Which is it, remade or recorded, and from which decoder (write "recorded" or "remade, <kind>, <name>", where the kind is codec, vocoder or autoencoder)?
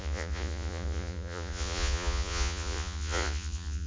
remade, vocoder, Vocos